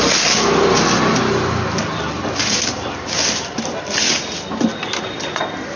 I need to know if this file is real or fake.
real